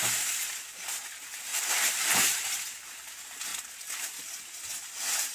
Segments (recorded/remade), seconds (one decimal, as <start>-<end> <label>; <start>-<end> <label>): 0.0-1.5 recorded; 1.5-2.8 remade; 2.8-4.7 recorded; 4.7-5.3 remade